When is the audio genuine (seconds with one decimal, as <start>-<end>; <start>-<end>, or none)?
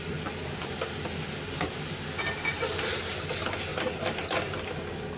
0.0-5.2